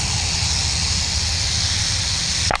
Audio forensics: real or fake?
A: real